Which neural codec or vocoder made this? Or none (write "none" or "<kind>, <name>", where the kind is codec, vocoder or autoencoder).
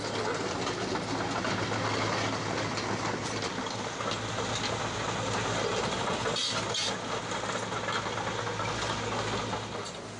none